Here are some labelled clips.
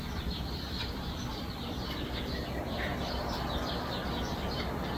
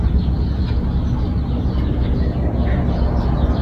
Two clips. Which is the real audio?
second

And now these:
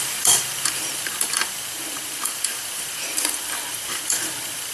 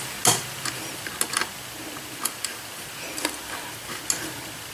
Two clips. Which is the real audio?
second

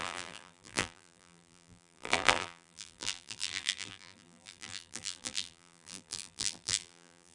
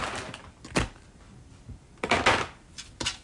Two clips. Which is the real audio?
second